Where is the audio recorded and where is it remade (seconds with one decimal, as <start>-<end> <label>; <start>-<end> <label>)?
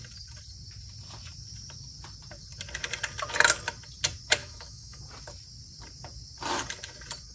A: 0.0-4.4 recorded; 4.4-5.0 remade; 5.0-7.3 recorded